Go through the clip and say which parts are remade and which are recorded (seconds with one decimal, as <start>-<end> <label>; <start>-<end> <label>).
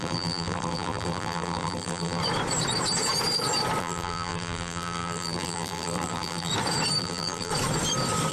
0.0-2.2 remade; 2.2-3.8 recorded; 3.8-6.5 remade; 6.5-7.0 recorded; 7.0-7.5 remade; 7.5-8.3 recorded